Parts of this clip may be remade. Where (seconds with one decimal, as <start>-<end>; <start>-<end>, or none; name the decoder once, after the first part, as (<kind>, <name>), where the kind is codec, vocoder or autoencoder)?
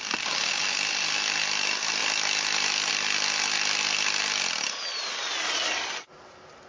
none